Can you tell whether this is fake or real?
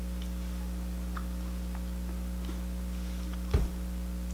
real